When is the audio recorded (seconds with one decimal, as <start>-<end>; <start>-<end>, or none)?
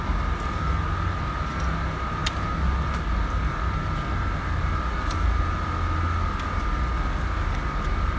0.0-8.2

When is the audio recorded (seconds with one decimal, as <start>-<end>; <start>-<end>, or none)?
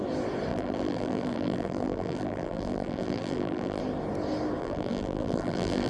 0.0-0.5; 3.8-4.6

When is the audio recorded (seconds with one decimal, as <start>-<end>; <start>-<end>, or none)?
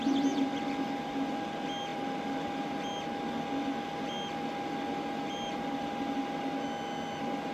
0.0-7.5